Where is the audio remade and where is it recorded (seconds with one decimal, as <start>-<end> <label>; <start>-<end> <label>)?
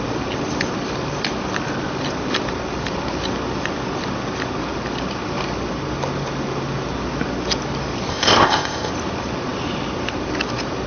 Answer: 0.0-8.1 recorded; 8.1-8.9 remade; 8.9-10.9 recorded